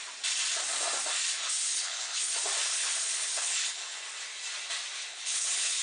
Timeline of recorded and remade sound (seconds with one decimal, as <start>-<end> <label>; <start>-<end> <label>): 0.0-1.7 recorded; 1.7-2.3 remade; 2.3-2.7 recorded; 2.7-4.0 remade; 4.0-5.1 recorded; 5.1-5.8 remade